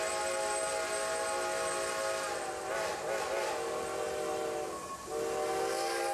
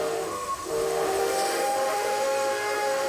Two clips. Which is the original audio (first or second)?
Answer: first